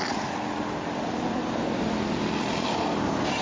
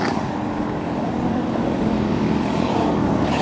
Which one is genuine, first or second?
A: first